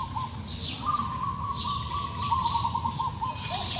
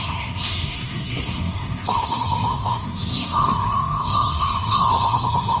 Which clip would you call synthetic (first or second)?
second